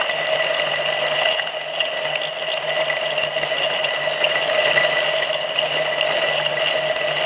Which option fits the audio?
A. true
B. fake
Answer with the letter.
A